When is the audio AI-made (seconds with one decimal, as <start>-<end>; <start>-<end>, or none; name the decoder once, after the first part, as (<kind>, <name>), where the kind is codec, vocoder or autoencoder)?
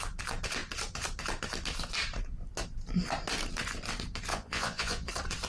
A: 4.3-5.1 (vocoder, Vocos)